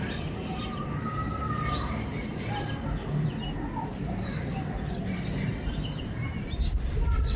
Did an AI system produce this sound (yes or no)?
yes